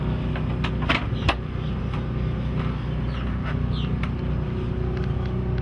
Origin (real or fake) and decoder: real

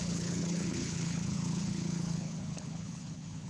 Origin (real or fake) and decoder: fake, codec, HILCodec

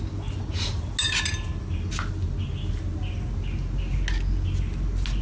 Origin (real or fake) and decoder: real